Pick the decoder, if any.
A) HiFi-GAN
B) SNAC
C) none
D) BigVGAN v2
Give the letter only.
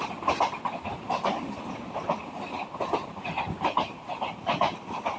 C